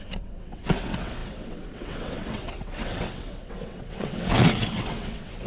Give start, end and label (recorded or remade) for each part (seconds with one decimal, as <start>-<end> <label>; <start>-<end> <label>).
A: 0.0-5.5 remade